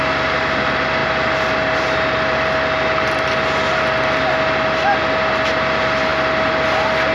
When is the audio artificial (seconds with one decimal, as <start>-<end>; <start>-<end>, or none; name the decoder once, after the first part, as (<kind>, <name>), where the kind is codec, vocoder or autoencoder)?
none